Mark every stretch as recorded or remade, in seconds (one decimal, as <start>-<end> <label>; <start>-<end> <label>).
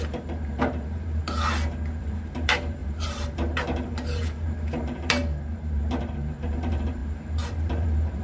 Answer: 0.0-1.2 remade; 1.2-2.0 recorded; 2.0-8.2 remade